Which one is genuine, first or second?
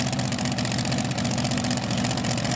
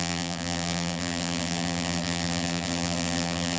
first